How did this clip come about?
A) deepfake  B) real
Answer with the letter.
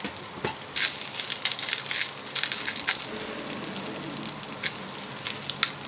B